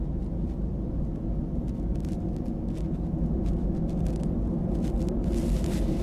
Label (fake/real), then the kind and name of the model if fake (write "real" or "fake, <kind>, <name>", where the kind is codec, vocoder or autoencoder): real